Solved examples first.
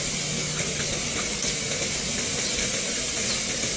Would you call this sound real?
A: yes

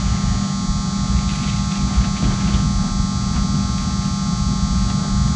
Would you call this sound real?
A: yes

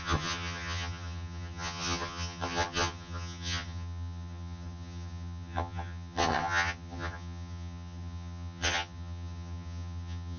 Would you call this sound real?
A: no